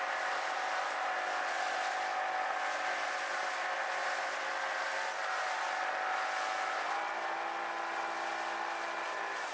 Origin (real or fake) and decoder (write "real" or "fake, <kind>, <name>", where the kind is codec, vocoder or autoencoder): real